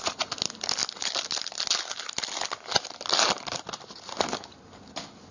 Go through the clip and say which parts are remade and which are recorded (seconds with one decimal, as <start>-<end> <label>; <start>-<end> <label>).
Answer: 0.0-5.3 recorded